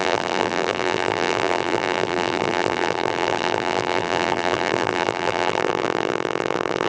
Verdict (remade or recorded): remade